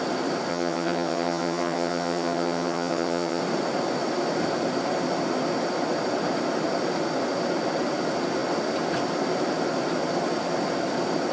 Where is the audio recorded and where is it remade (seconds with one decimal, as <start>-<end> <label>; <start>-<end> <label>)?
0.0-0.5 recorded; 0.5-3.4 remade; 3.4-11.3 recorded